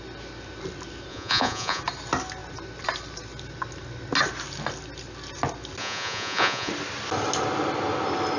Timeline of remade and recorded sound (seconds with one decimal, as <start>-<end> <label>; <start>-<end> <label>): 0.0-1.1 recorded; 1.1-1.8 remade; 1.8-5.8 recorded; 5.8-6.7 remade; 6.7-8.4 recorded